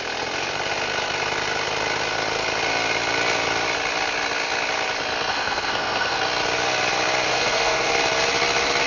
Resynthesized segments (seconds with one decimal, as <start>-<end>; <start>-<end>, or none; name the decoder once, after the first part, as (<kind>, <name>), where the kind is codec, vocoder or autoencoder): 5.3-6.2 (codec, SNAC); 7.3-7.9